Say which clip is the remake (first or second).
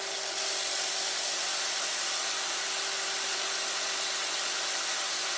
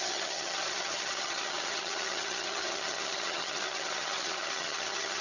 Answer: second